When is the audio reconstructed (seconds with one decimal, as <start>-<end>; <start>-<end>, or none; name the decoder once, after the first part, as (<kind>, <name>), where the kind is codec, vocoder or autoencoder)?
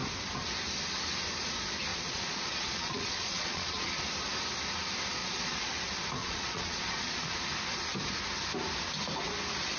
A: 1.9-4.0 (vocoder, Vocos); 5.2-5.7; 6.2-7.3